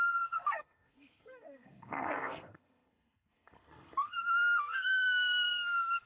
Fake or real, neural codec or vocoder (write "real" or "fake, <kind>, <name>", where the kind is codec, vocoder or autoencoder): fake, codec, SNAC